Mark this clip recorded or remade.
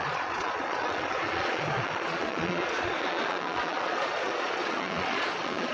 remade